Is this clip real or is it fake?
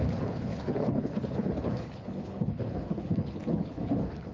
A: fake